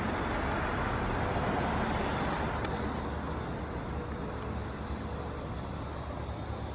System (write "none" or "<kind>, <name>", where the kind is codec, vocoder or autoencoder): none